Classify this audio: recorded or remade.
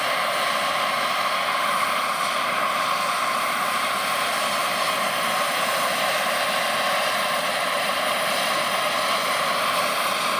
recorded